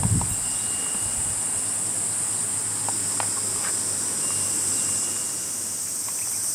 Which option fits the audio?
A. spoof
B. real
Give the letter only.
B